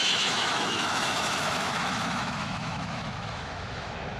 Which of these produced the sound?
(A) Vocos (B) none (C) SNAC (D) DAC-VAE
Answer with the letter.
D